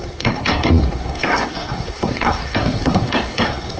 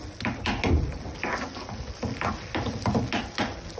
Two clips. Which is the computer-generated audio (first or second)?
first